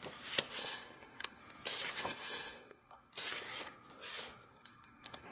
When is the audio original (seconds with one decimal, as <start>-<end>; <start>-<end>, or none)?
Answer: 0.0-0.6; 1.4-2.0; 3.1-4.5